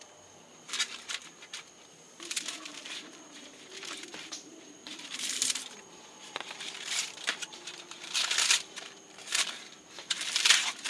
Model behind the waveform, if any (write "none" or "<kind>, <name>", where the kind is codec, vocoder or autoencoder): vocoder, BigVGAN v2